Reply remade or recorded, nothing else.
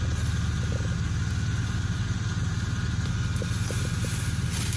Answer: recorded